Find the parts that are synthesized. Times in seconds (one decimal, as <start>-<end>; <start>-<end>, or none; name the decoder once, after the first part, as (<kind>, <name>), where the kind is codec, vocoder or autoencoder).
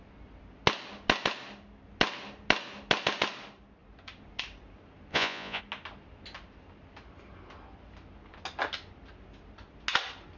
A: 5.1-5.6 (vocoder, Vocos)